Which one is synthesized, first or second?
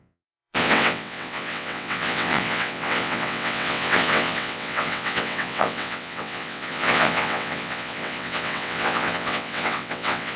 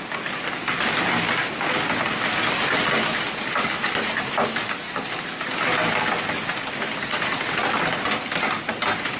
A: first